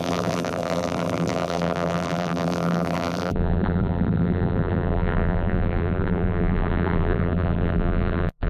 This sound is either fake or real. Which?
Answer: fake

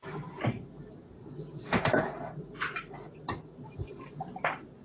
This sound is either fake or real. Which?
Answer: fake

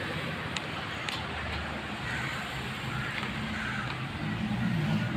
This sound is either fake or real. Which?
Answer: real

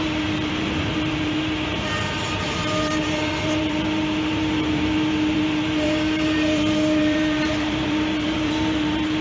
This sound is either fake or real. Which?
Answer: fake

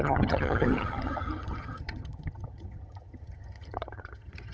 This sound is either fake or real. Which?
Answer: fake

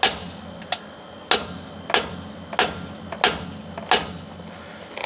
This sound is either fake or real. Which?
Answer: real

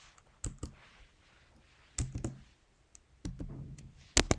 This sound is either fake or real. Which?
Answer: real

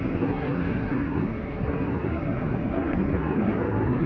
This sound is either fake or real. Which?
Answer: fake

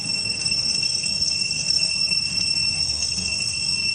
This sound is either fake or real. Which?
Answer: fake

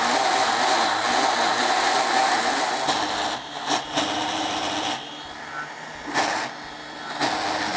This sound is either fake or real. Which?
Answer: real